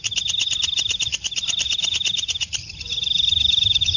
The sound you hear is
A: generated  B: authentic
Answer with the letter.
B